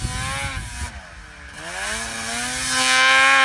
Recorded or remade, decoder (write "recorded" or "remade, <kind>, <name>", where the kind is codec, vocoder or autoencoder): recorded